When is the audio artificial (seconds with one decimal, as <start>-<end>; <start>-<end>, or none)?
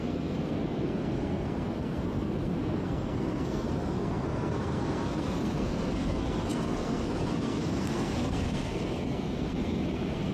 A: 0.0-10.3